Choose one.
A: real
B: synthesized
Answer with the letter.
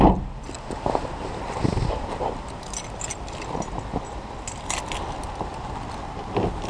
A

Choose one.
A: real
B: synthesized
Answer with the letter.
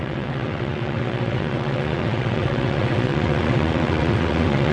B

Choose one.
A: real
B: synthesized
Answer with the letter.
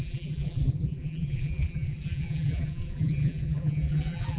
B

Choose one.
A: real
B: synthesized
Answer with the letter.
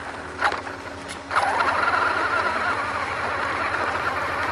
A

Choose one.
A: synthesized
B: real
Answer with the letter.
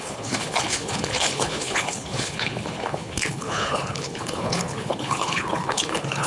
A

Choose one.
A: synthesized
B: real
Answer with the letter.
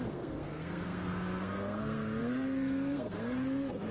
A